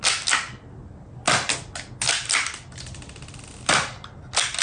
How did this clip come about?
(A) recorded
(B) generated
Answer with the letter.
A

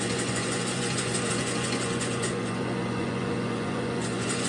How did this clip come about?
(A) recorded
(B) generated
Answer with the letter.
B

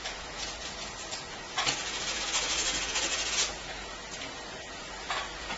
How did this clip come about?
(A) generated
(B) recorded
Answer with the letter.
A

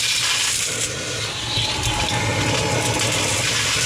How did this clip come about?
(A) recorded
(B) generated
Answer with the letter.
A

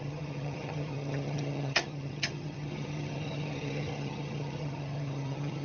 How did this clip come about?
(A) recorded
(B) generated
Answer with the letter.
B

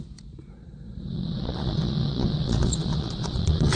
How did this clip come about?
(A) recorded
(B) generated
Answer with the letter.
B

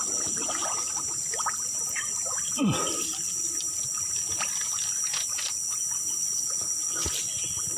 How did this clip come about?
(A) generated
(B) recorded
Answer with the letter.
B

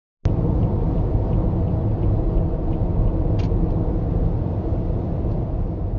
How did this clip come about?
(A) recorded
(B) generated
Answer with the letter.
A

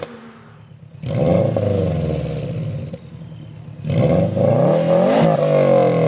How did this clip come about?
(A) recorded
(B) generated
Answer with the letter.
A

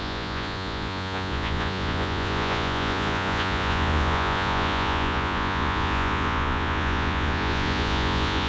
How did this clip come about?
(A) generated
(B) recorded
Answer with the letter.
A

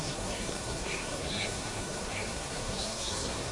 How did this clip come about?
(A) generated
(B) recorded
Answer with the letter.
A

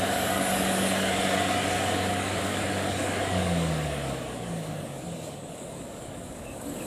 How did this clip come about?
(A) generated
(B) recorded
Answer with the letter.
A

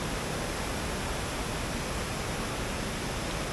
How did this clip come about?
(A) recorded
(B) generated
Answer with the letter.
A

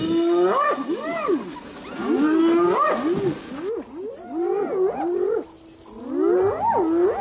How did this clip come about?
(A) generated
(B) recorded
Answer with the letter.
B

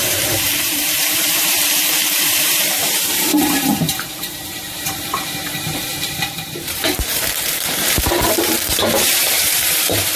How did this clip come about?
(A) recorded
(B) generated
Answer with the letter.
B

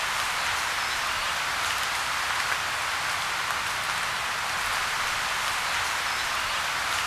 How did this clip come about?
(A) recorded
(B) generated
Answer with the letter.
A